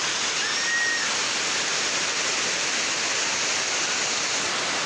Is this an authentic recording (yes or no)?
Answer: yes